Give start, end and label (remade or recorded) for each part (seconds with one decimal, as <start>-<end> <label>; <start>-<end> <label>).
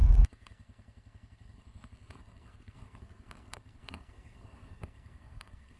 0.0-5.8 remade